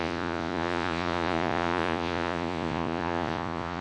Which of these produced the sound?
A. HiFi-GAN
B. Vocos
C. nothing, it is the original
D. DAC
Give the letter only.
B